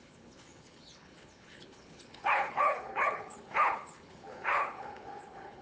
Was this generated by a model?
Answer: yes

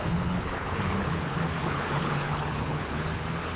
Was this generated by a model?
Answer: yes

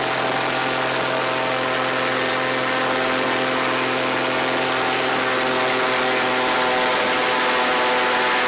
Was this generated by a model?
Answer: no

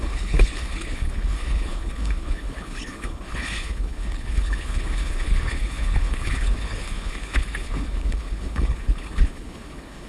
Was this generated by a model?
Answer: yes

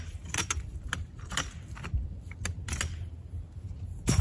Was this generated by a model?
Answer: no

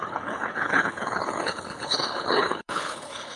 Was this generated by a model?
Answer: yes